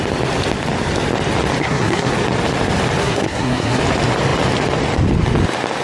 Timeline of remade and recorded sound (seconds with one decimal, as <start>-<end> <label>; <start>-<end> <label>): 0.0-1.6 recorded; 1.6-2.1 remade; 2.1-3.0 recorded; 3.0-3.8 remade; 3.8-5.8 recorded